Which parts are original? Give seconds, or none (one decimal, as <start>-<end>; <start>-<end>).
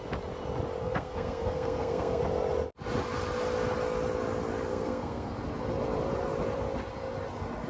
0.0-0.8; 2.2-4.7; 5.4-7.7